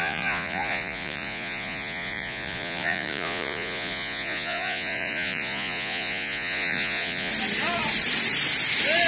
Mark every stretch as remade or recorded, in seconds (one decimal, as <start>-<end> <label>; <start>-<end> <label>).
0.0-7.3 remade; 7.3-9.1 recorded